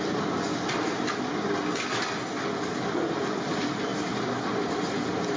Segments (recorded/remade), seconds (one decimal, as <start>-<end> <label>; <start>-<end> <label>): 0.0-5.4 recorded